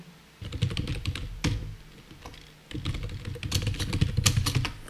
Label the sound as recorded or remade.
recorded